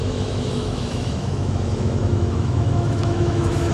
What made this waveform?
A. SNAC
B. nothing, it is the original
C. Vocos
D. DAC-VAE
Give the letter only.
D